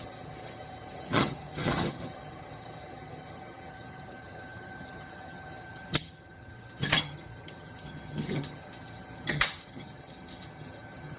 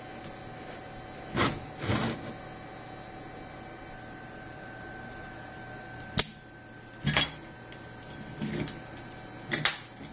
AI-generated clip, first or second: first